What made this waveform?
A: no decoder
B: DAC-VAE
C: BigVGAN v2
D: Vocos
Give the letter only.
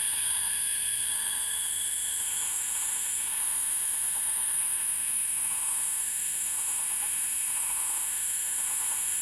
B